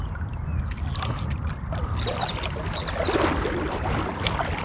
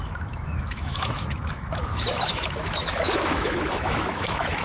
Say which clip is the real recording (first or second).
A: first